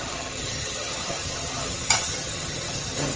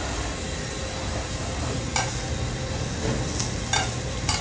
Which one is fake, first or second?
first